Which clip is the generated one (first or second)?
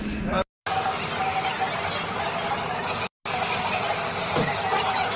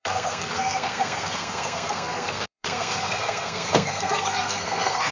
second